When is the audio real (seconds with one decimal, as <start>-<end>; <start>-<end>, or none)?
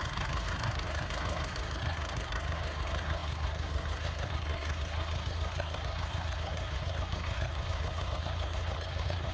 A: none